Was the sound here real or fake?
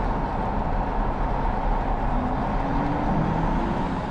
real